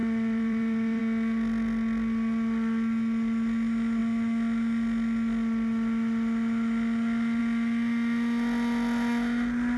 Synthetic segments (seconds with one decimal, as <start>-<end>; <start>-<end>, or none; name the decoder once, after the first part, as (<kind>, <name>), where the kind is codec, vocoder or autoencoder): 0.0-1.0 (vocoder, BigVGAN v2)